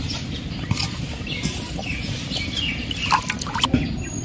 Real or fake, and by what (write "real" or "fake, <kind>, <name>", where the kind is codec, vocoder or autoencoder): real